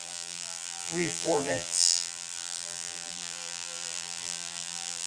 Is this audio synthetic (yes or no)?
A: yes